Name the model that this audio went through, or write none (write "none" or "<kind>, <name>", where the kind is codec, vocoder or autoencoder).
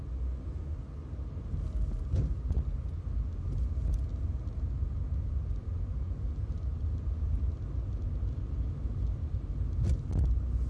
none